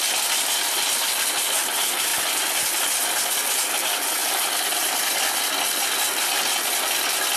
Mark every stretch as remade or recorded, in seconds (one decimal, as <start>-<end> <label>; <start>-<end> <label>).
0.0-7.4 recorded